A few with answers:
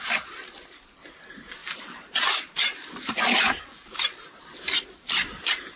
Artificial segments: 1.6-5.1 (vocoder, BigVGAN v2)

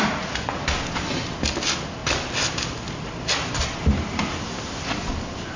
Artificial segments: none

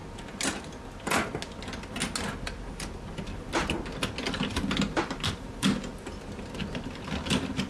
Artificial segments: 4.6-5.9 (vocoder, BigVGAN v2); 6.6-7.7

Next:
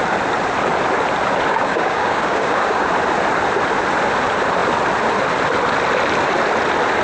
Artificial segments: 1.5-2.9 (codec, DAC)